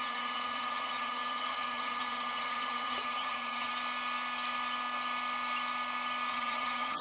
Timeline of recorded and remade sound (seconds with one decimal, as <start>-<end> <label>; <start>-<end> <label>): 0.0-3.7 remade; 3.7-6.3 recorded; 6.3-7.0 remade